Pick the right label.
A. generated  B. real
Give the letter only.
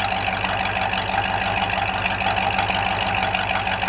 B